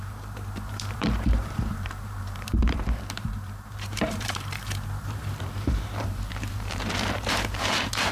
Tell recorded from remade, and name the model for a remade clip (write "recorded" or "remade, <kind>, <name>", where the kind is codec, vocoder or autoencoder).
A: remade, vocoder, BigVGAN v2